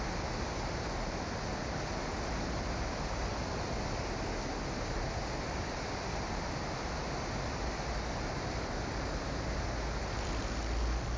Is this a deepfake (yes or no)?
no